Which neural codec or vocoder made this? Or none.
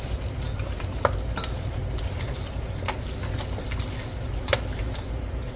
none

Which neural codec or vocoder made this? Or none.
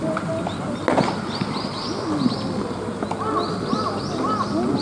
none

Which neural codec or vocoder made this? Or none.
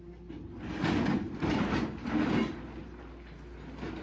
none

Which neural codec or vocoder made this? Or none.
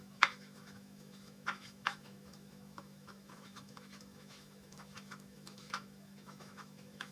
autoencoder, DAC-VAE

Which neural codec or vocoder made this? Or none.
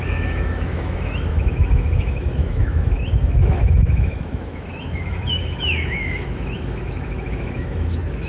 autoencoder, DAC-VAE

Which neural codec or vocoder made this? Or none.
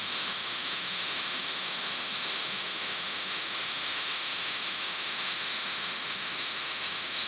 autoencoder, DAC-VAE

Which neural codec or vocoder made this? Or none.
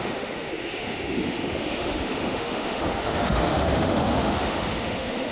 autoencoder, DAC-VAE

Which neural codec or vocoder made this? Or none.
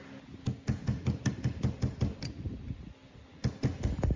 none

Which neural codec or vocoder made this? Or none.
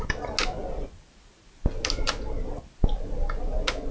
none